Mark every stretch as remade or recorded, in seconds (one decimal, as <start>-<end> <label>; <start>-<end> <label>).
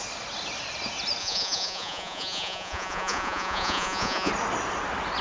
0.0-1.2 recorded; 1.2-4.3 remade; 4.3-5.2 recorded